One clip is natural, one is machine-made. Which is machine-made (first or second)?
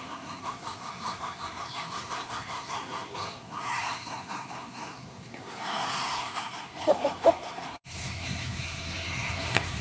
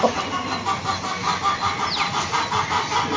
first